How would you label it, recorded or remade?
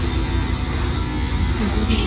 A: recorded